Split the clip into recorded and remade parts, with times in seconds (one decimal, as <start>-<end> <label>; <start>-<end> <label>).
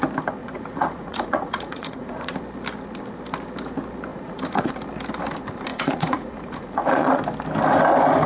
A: 0.0-0.4 recorded; 0.4-2.4 remade; 2.4-4.1 recorded; 4.1-4.7 remade; 4.7-5.7 recorded; 5.7-7.2 remade; 7.2-8.3 recorded